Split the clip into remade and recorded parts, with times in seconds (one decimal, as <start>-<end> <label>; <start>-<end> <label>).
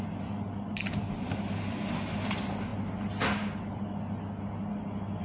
0.0-5.2 recorded